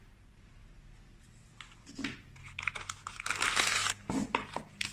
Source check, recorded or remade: recorded